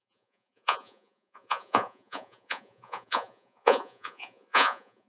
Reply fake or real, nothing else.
fake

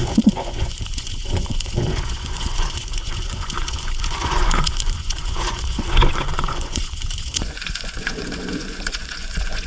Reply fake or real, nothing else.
fake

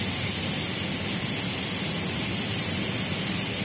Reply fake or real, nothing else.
real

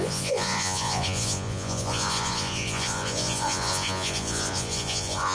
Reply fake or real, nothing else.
fake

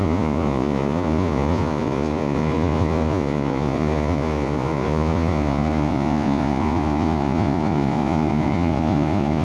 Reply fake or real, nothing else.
fake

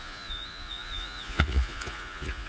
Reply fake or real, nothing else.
fake